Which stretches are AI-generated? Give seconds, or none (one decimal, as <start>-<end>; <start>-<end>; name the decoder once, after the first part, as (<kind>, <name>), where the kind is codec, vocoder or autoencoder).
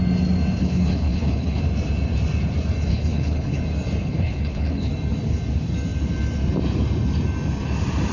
0.6-1.6 (codec, HILCodec); 2.9-3.6; 4.0-4.9